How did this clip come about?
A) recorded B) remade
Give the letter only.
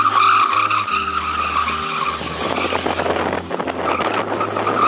A